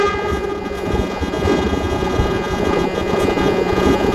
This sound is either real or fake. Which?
fake